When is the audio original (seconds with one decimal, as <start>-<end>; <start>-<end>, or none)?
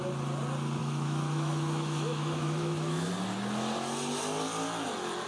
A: 0.0-0.8; 3.1-5.3